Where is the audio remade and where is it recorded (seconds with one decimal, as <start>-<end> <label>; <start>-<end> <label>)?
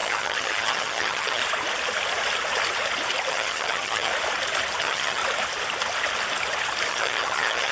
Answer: 0.0-1.4 remade; 1.4-3.3 recorded; 3.3-4.1 remade; 4.1-4.8 recorded; 4.8-5.2 remade; 5.2-6.9 recorded; 6.9-7.7 remade